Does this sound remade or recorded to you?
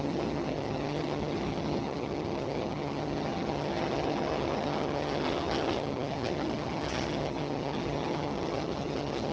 remade